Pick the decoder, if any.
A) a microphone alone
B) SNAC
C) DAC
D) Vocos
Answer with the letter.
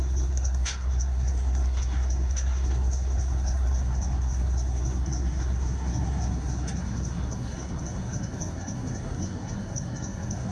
B